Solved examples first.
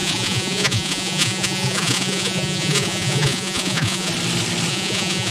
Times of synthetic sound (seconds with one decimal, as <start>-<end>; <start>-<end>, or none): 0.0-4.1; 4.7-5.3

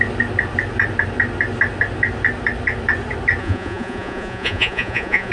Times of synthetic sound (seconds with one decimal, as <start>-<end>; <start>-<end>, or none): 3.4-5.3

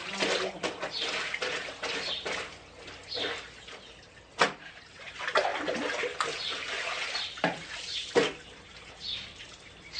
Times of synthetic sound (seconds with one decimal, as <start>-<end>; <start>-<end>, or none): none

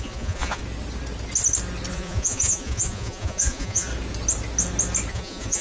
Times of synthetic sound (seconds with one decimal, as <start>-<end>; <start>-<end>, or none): 0.0-0.6; 1.9-3.9; 5.1-5.6